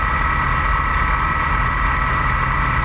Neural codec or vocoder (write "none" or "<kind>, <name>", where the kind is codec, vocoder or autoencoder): none